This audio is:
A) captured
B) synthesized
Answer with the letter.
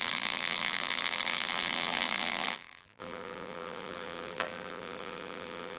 B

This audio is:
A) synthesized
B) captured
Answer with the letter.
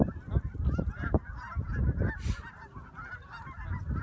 B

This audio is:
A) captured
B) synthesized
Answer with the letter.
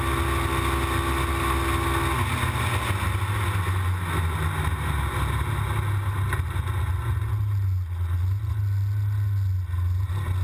A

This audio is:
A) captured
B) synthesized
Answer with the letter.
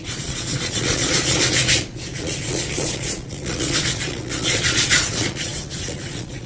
B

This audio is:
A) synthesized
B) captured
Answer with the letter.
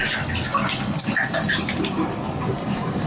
B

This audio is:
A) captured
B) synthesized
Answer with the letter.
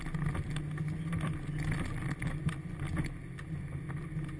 A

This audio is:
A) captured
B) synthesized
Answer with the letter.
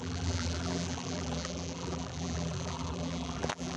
B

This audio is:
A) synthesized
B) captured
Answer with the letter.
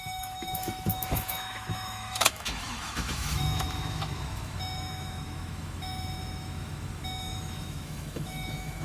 A